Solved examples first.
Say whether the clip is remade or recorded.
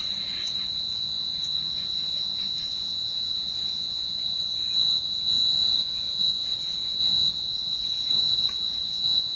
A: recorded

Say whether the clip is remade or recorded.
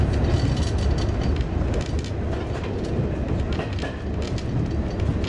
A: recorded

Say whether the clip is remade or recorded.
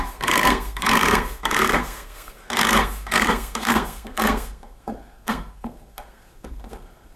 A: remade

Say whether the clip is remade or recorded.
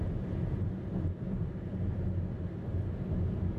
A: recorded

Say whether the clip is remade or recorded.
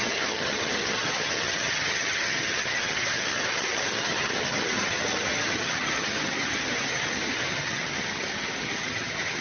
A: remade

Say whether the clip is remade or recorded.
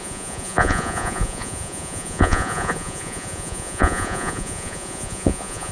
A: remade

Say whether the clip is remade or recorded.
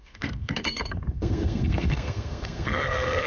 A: remade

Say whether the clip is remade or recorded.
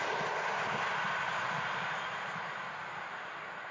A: recorded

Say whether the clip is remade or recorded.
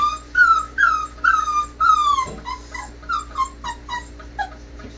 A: recorded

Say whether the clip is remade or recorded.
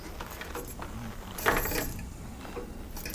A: recorded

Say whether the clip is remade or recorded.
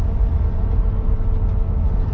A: recorded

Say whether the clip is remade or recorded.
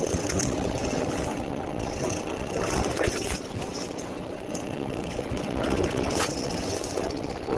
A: remade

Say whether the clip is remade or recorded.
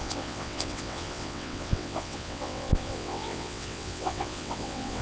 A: remade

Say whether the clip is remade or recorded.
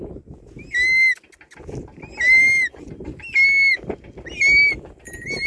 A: recorded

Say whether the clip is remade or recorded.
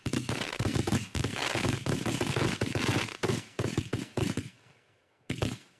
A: remade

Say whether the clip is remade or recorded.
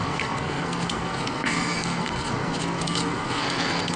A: remade